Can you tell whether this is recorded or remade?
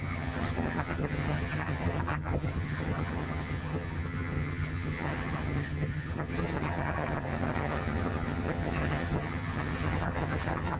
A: remade